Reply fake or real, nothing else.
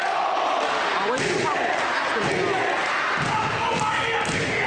real